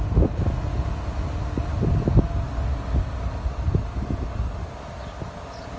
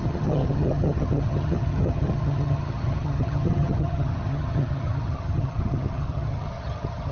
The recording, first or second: first